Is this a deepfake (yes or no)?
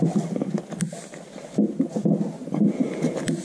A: no